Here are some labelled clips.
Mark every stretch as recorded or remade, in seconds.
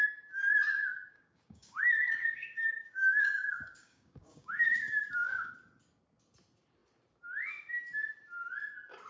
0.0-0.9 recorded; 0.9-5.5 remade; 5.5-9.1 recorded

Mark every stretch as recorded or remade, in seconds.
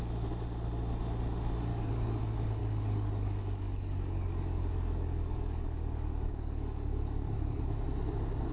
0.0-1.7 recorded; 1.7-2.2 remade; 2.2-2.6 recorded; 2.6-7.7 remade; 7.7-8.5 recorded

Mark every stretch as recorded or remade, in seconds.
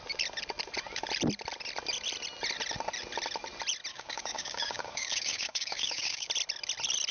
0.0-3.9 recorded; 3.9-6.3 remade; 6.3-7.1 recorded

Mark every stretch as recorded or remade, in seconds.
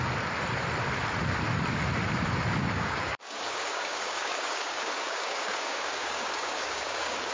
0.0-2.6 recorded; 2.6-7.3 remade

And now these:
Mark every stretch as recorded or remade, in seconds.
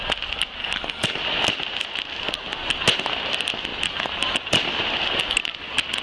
0.0-0.6 recorded; 0.6-1.2 remade; 1.2-6.0 recorded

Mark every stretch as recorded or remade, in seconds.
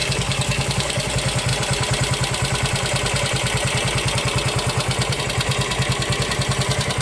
0.0-1.1 remade; 1.1-7.0 recorded